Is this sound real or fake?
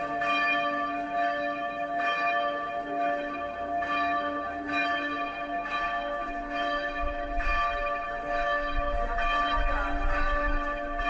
fake